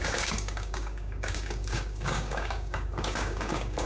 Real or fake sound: fake